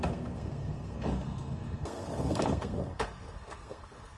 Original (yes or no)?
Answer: no